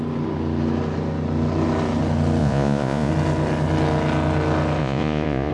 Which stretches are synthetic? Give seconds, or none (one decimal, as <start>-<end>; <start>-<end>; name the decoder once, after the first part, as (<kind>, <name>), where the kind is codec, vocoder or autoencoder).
2.4-3.1 (vocoder, Vocos); 4.8-5.5